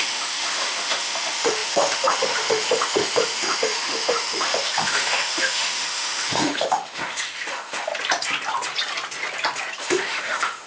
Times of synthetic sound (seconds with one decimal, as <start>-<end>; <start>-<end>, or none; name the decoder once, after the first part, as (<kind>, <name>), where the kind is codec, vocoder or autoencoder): 0.0-7.9 (autoencoder, DAC-VAE); 9.8-10.7